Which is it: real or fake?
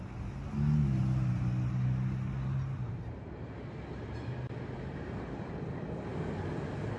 real